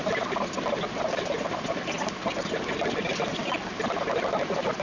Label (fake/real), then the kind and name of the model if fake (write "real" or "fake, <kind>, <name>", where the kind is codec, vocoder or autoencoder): real